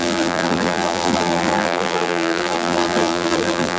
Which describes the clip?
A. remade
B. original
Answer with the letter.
A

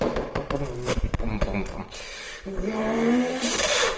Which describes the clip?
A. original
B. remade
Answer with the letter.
B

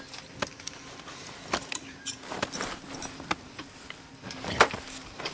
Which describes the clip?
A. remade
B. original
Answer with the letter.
B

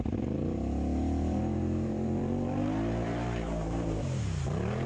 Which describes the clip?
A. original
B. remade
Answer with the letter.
B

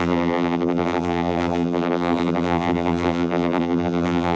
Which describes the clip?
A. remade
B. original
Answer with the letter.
A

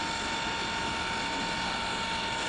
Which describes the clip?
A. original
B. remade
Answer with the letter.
A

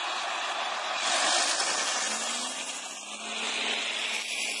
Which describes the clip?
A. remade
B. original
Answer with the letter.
B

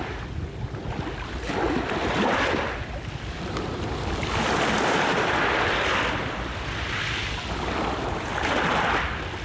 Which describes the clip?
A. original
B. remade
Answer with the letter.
A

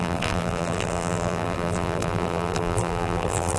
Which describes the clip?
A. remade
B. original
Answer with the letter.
A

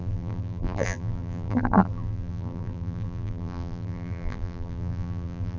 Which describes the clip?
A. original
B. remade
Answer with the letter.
B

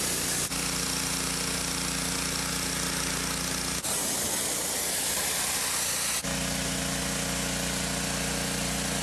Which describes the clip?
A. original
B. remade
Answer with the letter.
A